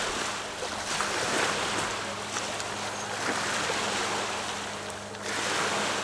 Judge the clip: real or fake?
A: real